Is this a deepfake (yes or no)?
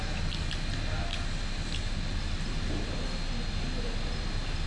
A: no